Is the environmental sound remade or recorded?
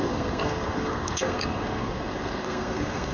remade